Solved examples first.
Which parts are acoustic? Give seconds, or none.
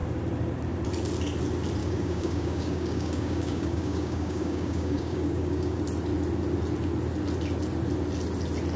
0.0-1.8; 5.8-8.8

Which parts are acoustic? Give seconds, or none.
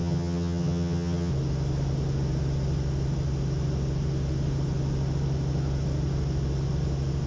1.3-7.3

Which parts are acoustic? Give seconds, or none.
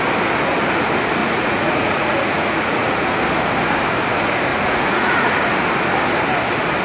0.0-1.2; 3.2-4.5; 5.4-6.8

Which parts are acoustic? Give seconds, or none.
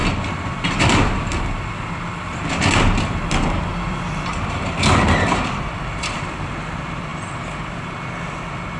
2.5-3.7; 6.5-8.8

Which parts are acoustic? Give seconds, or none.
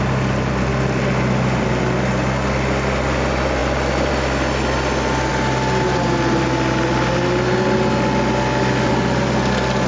0.0-9.9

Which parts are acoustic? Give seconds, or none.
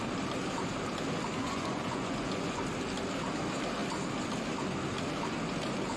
0.0-1.4; 2.6-6.0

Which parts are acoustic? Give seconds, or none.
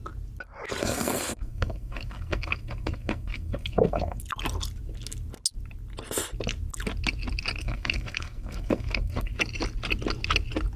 0.0-0.8; 4.2-7.6; 9.3-10.8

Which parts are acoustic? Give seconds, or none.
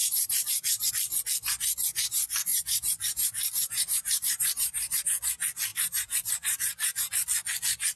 0.9-2.5; 5.0-5.7; 7.1-8.0